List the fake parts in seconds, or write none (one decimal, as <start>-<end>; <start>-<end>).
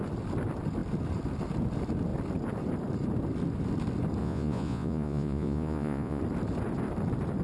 4.2-6.2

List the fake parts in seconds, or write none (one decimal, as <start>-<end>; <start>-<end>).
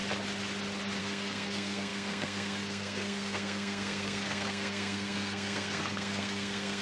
1.0-6.8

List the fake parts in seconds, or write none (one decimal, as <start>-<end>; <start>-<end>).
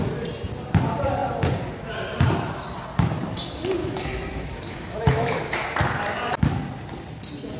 3.8-5.4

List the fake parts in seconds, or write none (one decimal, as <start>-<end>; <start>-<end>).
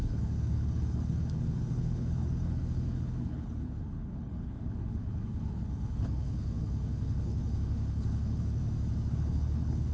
0.0-8.6; 9.1-9.9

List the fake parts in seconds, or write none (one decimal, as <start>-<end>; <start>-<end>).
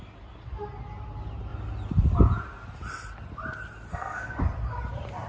3.9-4.4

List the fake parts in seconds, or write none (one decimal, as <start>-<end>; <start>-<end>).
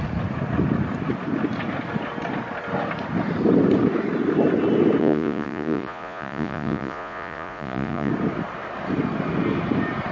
5.0-8.1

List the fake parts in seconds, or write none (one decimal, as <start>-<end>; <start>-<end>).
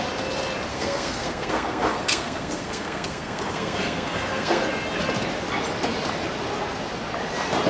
0.7-4.6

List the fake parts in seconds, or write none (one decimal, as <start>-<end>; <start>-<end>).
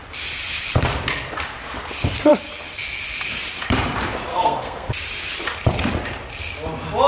4.3-4.9